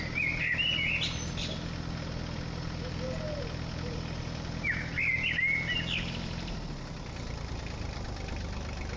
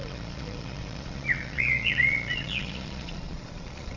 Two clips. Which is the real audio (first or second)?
first